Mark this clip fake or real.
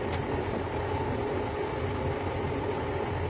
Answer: real